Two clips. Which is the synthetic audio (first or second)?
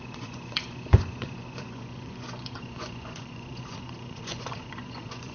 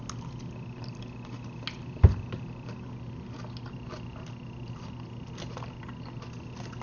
first